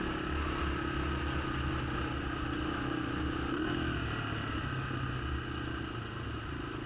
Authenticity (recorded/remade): recorded